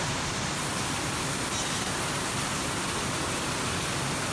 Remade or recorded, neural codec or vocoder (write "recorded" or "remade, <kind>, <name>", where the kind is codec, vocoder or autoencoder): recorded